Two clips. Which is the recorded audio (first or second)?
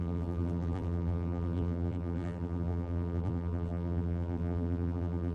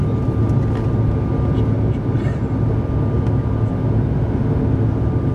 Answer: second